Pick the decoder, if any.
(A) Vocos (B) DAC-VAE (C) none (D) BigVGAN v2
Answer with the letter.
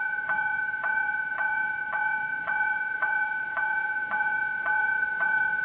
A